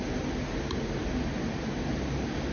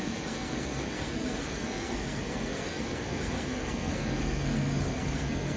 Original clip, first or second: first